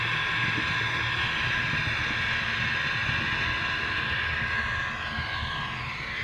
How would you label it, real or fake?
real